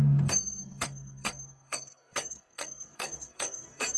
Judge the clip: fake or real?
fake